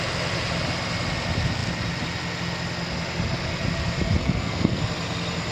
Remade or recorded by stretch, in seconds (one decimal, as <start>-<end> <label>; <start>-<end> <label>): 0.0-4.2 recorded; 4.2-4.8 remade; 4.8-5.5 recorded